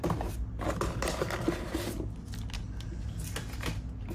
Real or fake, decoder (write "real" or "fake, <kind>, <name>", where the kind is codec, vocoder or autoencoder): real